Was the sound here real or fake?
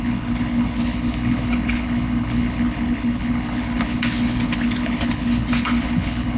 fake